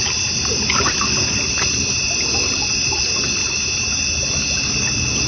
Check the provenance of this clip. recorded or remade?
recorded